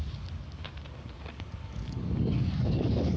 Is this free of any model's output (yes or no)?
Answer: no